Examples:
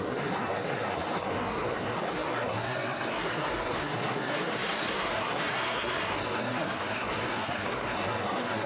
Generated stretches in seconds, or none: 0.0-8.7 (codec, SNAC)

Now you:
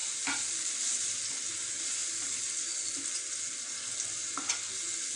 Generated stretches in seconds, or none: none

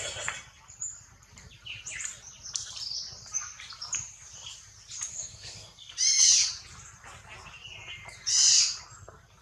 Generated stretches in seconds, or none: 5.1-5.9 (codec, SNAC)

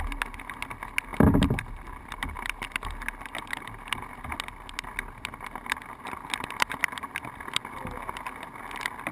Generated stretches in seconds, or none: none

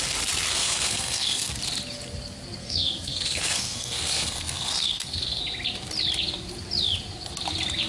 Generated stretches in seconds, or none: 0.5-1.6 (codec, SNAC); 2.6-5.4

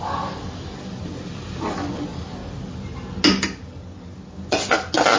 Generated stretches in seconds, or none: none

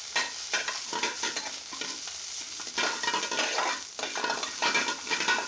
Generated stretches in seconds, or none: none